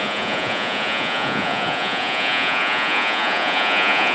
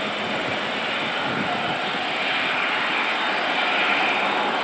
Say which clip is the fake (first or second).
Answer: first